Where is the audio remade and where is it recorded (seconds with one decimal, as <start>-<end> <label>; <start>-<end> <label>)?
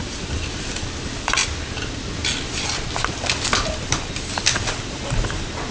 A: 0.0-1.4 remade; 1.4-3.0 recorded; 3.0-5.7 remade